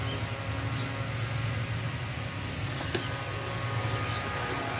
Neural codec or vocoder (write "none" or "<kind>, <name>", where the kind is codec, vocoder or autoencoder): none